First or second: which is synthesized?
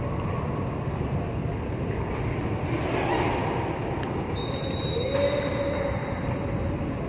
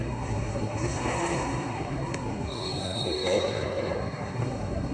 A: second